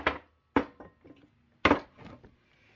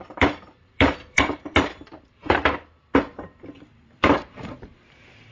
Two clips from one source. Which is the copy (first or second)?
second